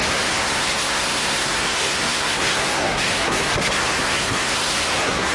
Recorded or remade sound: remade